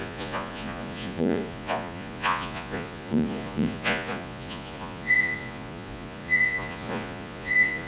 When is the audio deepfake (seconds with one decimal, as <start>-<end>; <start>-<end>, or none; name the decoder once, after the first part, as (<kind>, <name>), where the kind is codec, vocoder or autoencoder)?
0.0-7.9 (vocoder, Vocos)